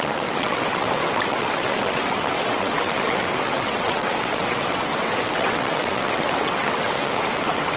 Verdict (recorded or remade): remade